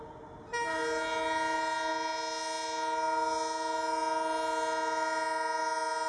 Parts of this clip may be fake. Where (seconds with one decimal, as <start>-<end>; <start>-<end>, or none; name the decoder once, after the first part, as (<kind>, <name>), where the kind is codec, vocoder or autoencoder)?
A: none